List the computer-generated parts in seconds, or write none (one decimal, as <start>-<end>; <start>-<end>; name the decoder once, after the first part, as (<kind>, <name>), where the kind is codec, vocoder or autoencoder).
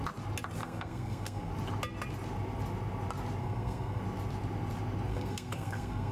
0.6-1.5 (codec, SNAC); 3.4-4.0; 5.1-6.1